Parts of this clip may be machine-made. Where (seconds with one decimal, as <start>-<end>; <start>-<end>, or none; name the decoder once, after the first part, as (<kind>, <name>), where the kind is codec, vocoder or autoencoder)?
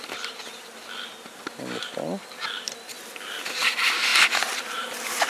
0.0-1.1 (vocoder, BigVGAN v2); 1.8-2.9; 3.6-5.3